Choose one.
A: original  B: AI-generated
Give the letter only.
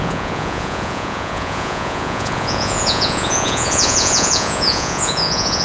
B